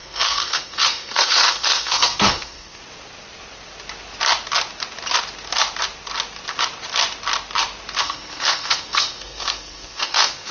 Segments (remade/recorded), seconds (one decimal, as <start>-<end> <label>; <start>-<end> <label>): 0.0-2.8 remade; 2.8-8.0 recorded; 8.0-10.5 remade